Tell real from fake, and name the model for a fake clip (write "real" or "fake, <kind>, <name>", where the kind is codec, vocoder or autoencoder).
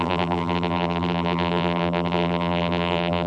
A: fake, vocoder, BigVGAN v2